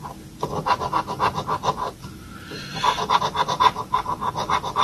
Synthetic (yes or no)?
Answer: no